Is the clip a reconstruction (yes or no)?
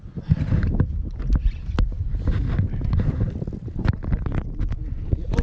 no